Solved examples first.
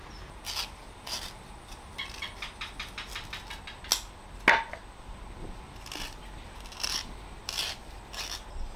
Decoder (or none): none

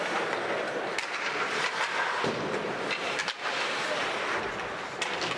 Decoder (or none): none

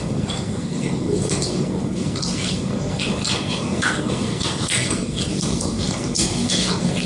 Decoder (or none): codec, SNAC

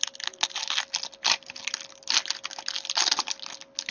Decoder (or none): none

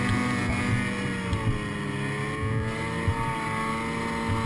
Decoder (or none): none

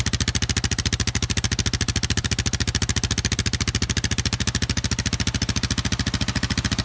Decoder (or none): none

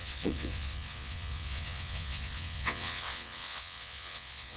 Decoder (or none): vocoder, WaveNeXt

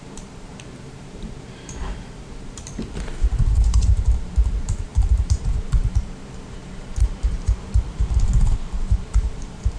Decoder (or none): vocoder, BigVGAN v2